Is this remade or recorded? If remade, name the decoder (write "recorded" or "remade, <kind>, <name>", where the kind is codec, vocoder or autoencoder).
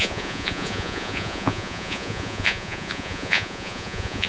remade, vocoder, Vocos